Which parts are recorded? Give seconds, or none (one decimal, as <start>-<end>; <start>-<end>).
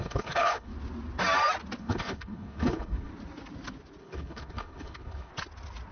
0.7-1.8; 3.1-4.0; 5.3-5.9